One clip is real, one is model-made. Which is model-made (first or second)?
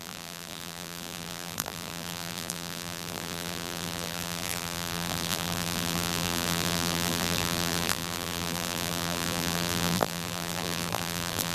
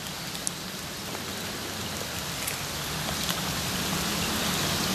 first